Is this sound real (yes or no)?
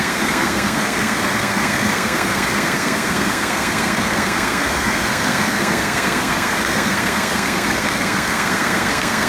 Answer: no